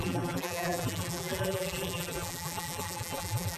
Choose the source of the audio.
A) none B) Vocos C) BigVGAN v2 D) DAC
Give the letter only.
C